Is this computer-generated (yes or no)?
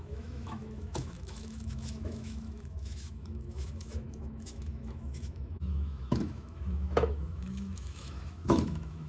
yes